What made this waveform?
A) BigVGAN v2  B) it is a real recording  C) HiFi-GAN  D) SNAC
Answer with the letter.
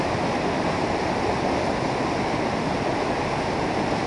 B